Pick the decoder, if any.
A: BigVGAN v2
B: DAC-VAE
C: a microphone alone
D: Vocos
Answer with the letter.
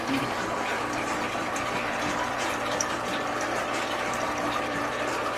A